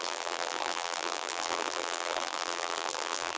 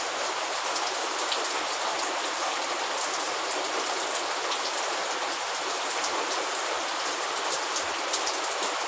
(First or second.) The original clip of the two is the second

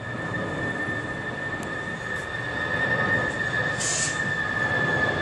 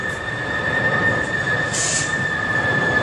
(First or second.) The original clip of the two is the first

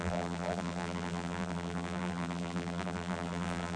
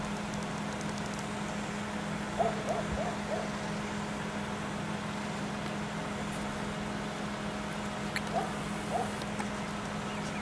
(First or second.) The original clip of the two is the second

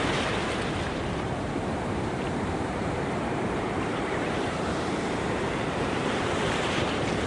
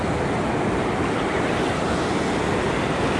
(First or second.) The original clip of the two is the second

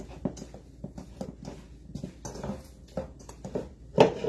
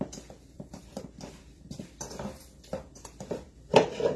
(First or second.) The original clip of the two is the first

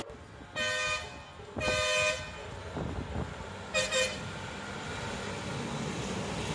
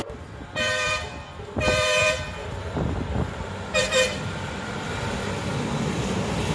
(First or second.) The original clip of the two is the first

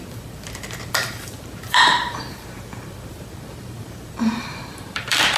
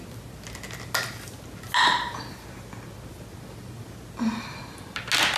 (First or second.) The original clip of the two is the second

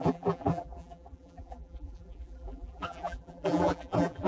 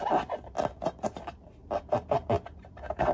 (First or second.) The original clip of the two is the second